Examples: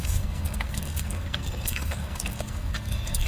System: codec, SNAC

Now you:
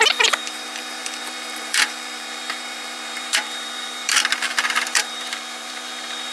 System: vocoder, BigVGAN v2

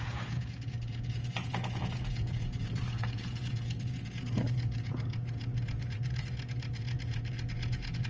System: vocoder, Vocos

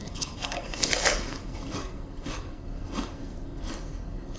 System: codec, SNAC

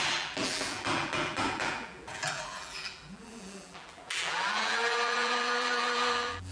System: vocoder, BigVGAN v2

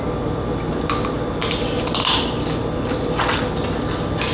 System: none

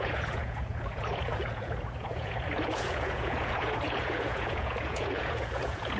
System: vocoder, Vocos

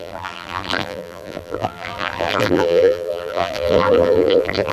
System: vocoder, BigVGAN v2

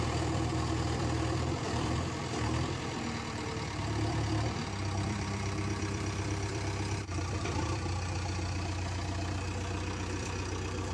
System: vocoder, BigVGAN v2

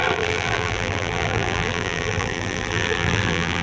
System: vocoder, BigVGAN v2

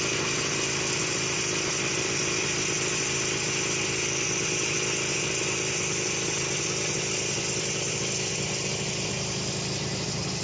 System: none